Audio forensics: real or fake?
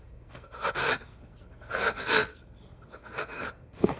fake